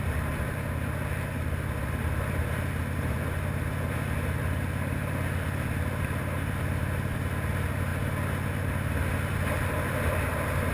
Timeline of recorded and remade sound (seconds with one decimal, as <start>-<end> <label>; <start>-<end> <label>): 0.0-10.7 recorded